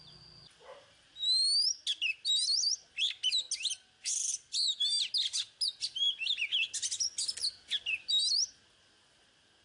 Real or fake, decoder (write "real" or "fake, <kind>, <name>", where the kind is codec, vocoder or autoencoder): real